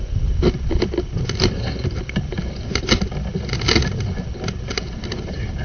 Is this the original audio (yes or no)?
yes